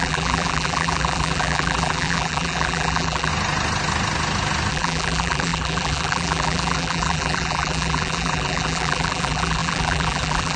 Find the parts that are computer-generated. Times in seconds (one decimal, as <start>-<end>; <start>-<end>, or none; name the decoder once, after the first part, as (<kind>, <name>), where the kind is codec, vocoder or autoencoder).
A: 0.0-3.3 (vocoder, BigVGAN v2); 4.7-10.6